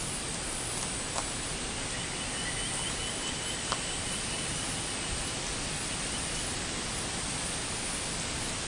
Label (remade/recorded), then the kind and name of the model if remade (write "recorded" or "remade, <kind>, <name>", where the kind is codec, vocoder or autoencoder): recorded